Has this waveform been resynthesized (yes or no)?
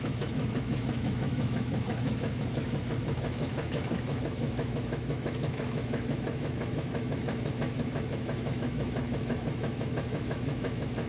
yes